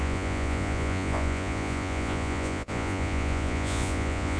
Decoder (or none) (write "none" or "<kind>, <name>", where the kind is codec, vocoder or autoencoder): vocoder, Vocos